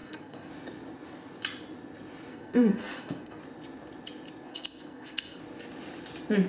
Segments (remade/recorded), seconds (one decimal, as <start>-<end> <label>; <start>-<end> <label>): 0.0-0.5 remade; 0.5-2.3 recorded; 2.3-3.4 remade; 3.4-4.5 recorded; 4.5-5.4 remade; 5.4-6.5 recorded